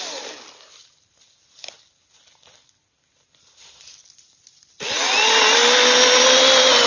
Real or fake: real